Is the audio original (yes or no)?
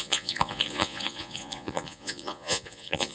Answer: no